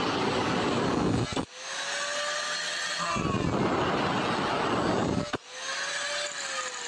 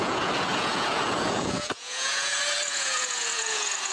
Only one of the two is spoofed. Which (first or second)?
second